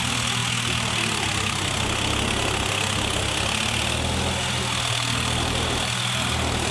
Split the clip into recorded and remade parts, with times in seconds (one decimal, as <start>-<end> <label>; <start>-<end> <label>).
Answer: 0.0-6.7 recorded